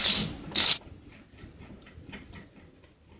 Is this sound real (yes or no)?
yes